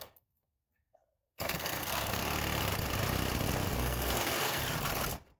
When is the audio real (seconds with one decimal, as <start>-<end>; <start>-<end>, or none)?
2.2-3.7; 4.6-5.4